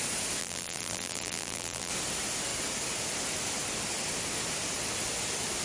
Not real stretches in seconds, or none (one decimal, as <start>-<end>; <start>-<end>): 0.4-1.9